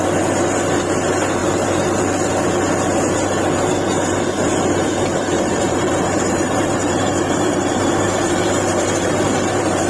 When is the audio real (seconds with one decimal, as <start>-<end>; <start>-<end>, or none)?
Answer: 0.0-5.1